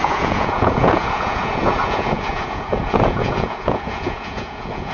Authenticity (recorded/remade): remade